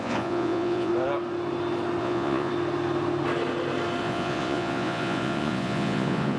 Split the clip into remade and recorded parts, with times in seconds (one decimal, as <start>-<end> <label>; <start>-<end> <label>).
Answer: 0.0-0.9 remade; 0.9-2.0 recorded; 2.0-2.5 remade; 2.5-4.0 recorded; 4.0-6.4 remade

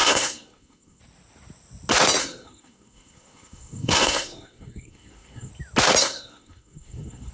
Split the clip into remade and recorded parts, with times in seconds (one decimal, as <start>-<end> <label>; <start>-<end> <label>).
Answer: 0.0-1.0 remade; 1.0-2.2 recorded; 2.2-5.5 remade; 5.5-6.0 recorded; 6.0-7.3 remade

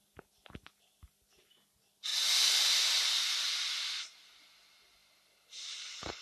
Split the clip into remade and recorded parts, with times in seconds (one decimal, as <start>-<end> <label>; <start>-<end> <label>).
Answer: 0.0-6.2 recorded

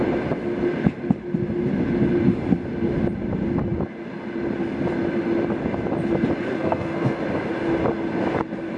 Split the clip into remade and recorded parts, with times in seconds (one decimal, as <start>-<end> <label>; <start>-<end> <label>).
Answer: 0.0-6.5 recorded; 6.5-7.2 remade; 7.2-8.8 recorded

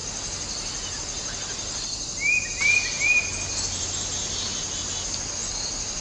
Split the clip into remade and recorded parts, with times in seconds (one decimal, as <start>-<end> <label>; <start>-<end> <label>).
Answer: 0.0-6.0 recorded

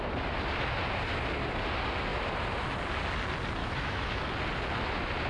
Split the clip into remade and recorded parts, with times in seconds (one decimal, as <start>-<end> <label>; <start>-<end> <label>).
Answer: 0.0-3.6 recorded; 3.6-4.3 remade; 4.3-5.3 recorded